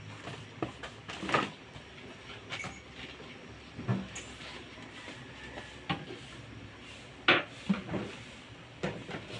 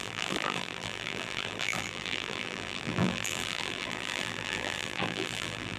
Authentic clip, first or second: first